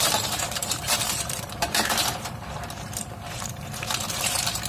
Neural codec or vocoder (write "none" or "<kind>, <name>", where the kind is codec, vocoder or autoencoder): vocoder, BigVGAN v2